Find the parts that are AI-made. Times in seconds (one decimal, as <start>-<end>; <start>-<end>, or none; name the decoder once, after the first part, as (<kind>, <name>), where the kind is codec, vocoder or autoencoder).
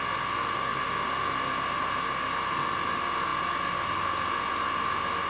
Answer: none